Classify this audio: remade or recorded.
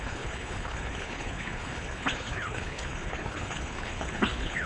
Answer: remade